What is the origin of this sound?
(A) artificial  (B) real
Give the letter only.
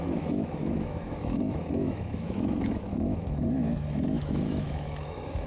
A